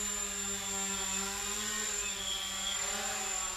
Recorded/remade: recorded